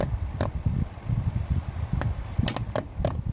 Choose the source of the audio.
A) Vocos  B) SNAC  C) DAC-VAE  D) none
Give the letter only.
D